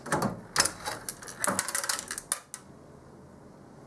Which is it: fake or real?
real